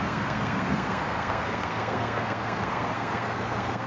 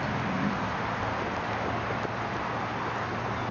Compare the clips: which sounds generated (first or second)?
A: first